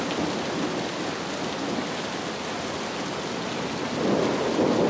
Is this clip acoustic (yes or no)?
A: yes